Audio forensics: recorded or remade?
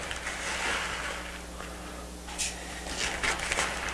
recorded